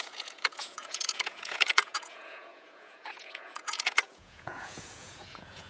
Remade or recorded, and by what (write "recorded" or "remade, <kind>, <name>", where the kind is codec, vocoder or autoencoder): remade, vocoder, Vocos